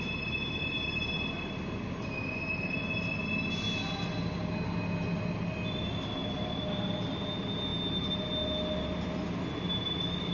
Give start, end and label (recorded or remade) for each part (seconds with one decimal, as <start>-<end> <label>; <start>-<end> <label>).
0.0-10.3 recorded